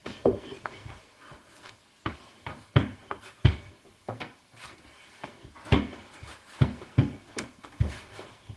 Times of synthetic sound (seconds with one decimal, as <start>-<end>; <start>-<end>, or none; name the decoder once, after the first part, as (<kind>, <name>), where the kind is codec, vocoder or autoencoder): 0.0-8.6 (codec, SNAC)